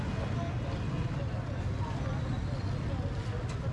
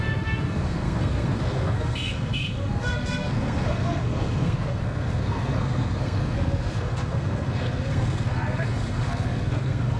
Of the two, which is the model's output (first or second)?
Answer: second